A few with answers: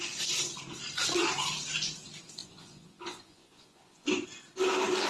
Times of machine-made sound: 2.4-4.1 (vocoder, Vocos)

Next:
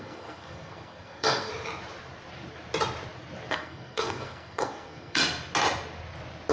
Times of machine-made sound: 0.0-1.5 (codec, SNAC); 3.5-5.2

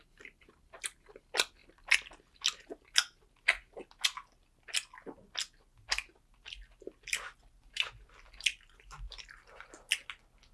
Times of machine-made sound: none

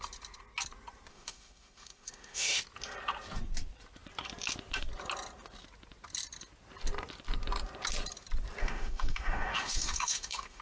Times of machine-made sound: 1.1-2.6 (autoencoder, DAC-VAE); 8.6-10.6

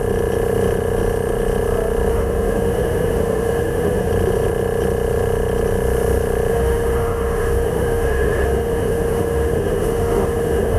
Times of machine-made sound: 2.1-4.1 (autoencoder, DAC-VAE); 6.5-10.8